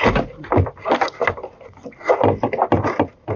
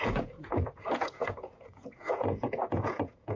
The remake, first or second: second